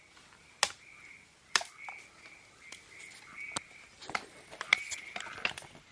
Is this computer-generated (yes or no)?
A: no